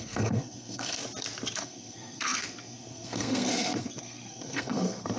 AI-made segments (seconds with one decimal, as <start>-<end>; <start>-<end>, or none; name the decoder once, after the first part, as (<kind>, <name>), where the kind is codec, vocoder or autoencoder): 0.0-1.0 (codec, SNAC); 1.6-5.2